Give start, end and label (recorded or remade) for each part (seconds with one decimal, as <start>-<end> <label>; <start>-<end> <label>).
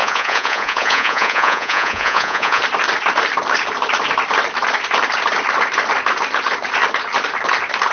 0.0-2.6 remade; 2.6-7.9 recorded